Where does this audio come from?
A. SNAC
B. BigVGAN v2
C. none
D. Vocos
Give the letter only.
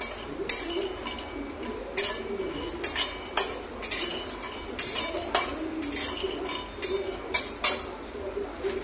C